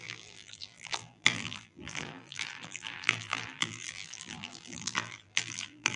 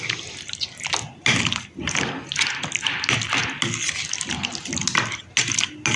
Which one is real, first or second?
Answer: second